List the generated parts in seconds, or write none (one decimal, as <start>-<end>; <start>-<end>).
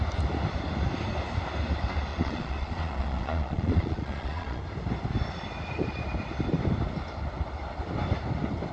2.1-4.6